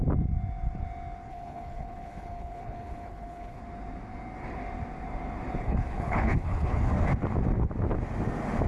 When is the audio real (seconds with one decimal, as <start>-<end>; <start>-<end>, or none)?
0.0-1.3; 3.6-5.6; 6.9-8.7

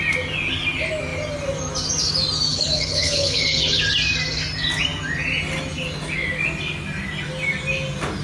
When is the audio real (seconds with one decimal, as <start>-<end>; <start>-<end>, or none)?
0.0-2.5; 3.8-8.2

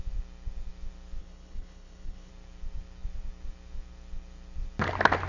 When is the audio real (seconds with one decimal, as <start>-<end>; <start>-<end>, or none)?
0.0-1.2; 2.3-5.3

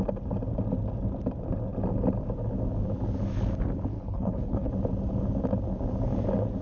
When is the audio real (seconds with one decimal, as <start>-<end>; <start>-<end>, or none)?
0.0-3.9; 4.7-6.6

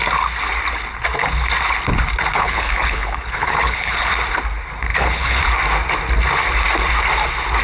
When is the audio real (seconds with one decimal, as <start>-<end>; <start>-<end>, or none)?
0.0-2.3; 4.1-4.9; 5.4-7.6

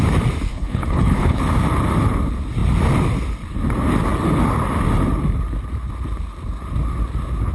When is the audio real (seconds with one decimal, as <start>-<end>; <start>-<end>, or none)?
0.0-0.5; 1.4-7.5

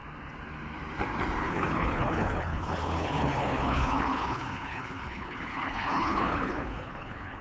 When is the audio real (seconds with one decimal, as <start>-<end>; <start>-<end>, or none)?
0.0-1.4

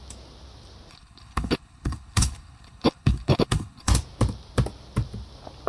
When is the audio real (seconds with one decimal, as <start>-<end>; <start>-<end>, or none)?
0.0-0.9; 3.9-5.7